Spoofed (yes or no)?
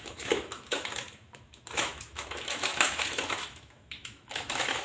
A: yes